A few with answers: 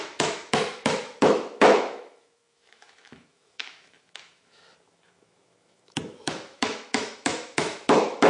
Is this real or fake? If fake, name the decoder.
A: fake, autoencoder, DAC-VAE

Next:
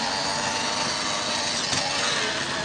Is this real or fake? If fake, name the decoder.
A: real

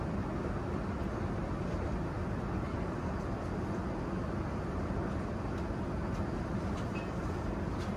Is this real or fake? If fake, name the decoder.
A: real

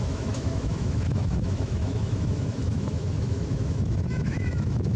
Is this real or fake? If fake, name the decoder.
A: fake, autoencoder, DAC-VAE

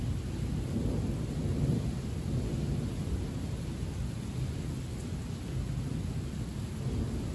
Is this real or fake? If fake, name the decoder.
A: real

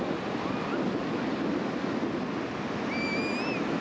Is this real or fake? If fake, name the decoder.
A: real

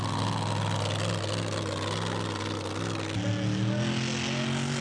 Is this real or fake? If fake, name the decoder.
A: real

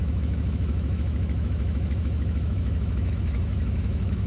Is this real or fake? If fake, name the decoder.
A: fake, autoencoder, DAC-VAE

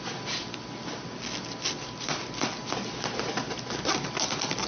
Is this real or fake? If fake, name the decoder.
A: real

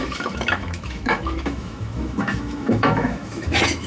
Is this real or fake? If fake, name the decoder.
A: fake, autoencoder, DAC-VAE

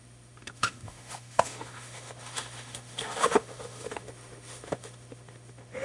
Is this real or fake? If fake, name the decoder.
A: fake, autoencoder, DAC-VAE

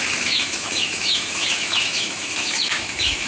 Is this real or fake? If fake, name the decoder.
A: fake, autoencoder, DAC-VAE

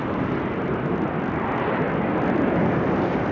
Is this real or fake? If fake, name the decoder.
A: real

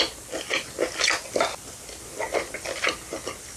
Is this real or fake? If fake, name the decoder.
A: real